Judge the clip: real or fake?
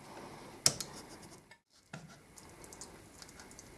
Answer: real